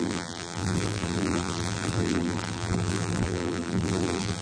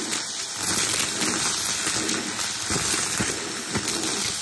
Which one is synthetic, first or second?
first